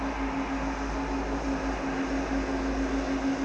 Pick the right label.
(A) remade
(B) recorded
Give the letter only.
B